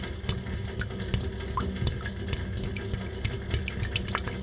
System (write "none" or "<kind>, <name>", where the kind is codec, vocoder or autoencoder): none